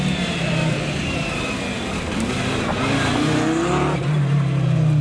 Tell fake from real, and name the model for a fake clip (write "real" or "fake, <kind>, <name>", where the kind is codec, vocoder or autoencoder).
real